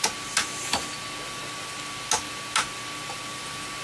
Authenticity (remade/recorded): recorded